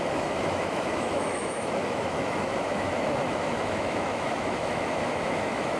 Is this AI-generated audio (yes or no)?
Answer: yes